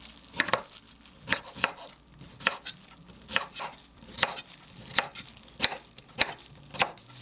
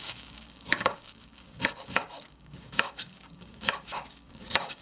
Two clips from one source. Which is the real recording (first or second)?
first